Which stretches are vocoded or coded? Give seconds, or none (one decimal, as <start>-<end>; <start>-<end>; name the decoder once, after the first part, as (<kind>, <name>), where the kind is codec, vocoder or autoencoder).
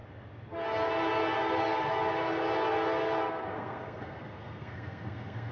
3.3-5.5 (codec, SNAC)